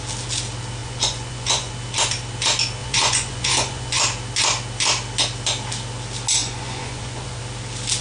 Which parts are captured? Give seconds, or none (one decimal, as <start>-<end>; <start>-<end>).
0.0-0.8; 1.7-2.8; 4.0-6.4; 7.4-8.0